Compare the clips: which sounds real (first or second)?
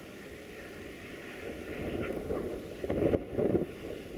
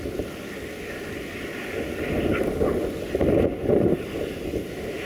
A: second